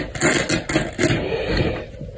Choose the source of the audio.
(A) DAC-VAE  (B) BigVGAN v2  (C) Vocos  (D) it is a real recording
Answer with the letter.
D